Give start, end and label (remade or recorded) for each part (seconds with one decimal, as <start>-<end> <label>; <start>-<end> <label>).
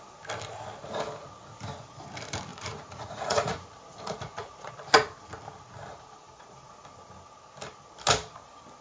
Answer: 0.0-2.5 recorded; 2.5-4.7 remade; 4.7-5.9 recorded; 5.9-6.7 remade; 6.7-8.8 recorded